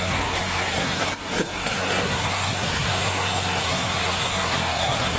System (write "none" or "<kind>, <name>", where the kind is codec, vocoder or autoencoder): codec, SNAC